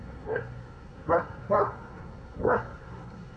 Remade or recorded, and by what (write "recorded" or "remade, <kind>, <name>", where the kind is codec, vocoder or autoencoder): remade, codec, SNAC